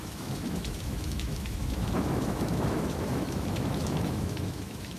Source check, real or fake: fake